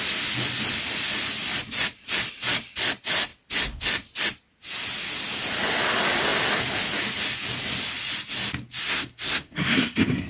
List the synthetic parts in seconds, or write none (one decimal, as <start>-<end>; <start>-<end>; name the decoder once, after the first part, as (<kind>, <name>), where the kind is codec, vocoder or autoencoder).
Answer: 8.8-10.3 (codec, SNAC)